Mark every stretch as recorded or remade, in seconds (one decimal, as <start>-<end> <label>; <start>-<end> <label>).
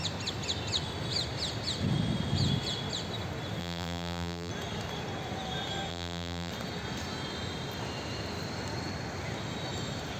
0.0-3.6 recorded; 3.6-4.5 remade; 4.5-5.9 recorded; 5.9-6.5 remade; 6.5-10.2 recorded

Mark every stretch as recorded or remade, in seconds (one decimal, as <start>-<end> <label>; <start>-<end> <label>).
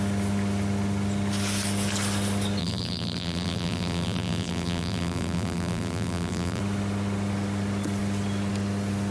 0.0-2.6 recorded; 2.6-6.6 remade; 6.6-9.1 recorded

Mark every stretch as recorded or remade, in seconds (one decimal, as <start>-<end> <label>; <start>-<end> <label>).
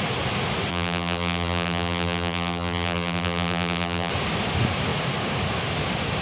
0.0-0.7 recorded; 0.7-4.1 remade; 4.1-6.2 recorded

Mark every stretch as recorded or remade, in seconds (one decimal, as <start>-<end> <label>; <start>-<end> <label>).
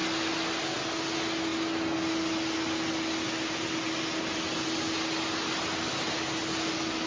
0.0-7.1 recorded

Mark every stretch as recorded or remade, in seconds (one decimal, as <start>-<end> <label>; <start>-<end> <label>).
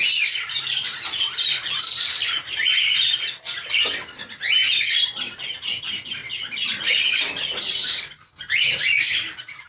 0.0-2.7 remade; 2.7-3.9 recorded; 3.9-4.6 remade; 4.6-5.8 recorded; 5.8-9.7 remade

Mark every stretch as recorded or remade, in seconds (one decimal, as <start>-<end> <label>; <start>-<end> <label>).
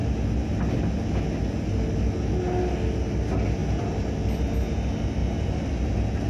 0.0-0.5 remade; 0.5-3.6 recorded; 3.6-4.1 remade; 4.1-5.2 recorded; 5.2-5.7 remade; 5.7-6.3 recorded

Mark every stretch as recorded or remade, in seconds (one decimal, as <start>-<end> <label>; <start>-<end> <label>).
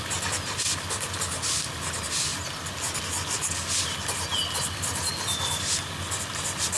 0.0-6.8 recorded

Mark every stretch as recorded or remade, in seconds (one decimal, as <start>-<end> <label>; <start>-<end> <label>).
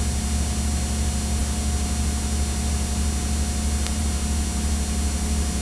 0.0-5.6 recorded